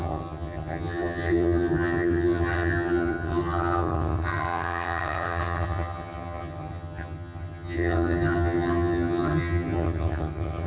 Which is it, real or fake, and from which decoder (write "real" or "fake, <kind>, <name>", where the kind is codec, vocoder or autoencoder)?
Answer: fake, vocoder, HiFi-GAN